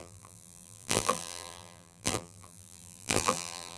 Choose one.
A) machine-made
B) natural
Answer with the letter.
A